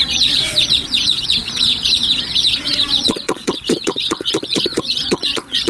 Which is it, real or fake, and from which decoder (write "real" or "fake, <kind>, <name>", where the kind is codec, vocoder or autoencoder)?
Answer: fake, vocoder, Vocos